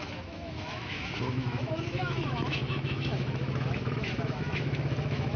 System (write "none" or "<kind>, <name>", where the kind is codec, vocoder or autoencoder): autoencoder, DAC-VAE